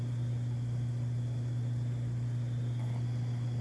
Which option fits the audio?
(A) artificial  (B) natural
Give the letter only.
B